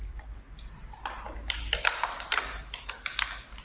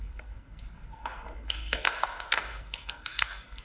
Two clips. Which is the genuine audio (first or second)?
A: first